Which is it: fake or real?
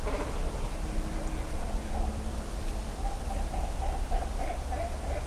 fake